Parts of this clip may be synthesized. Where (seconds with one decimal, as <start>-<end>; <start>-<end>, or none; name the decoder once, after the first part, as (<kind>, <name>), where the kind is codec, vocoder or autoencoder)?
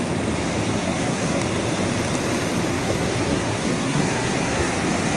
0.8-1.4 (codec, SNAC); 2.7-4.7